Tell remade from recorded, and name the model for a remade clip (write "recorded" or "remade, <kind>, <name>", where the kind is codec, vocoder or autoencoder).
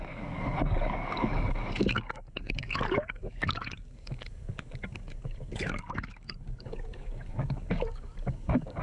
remade, codec, DAC